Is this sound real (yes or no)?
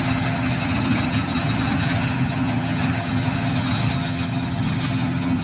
no